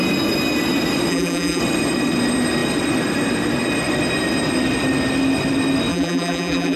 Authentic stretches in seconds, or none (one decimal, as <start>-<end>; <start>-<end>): 0.0-1.1; 1.6-5.9